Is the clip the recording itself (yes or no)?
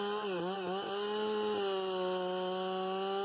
yes